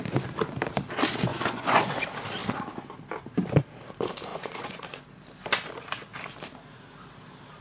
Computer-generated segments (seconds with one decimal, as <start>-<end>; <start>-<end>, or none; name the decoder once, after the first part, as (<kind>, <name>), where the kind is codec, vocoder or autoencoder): 1.3-1.9 (vocoder, Vocos); 4.3-5.0